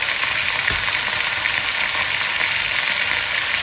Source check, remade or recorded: recorded